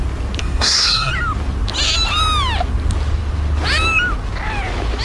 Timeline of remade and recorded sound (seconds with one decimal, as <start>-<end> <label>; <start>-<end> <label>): 0.0-0.4 recorded; 0.4-1.1 remade; 1.1-5.0 recorded